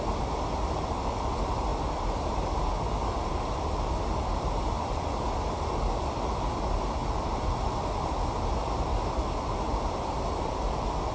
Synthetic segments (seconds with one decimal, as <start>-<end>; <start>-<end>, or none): none

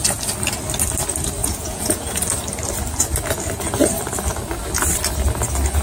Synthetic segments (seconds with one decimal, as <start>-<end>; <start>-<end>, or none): 1.4-2.2

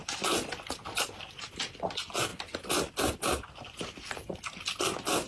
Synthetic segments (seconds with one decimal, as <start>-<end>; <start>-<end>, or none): none

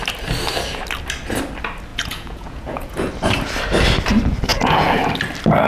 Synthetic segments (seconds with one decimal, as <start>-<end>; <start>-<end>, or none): 1.9-3.1; 4.5-5.1

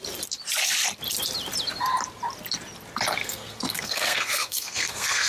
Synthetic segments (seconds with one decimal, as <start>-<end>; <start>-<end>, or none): 3.2-5.3